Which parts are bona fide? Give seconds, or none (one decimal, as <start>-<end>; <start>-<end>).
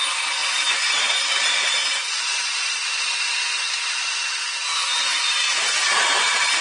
0.0-6.6